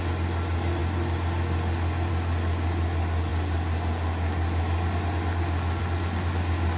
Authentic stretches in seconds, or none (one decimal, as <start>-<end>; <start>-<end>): 0.0-6.8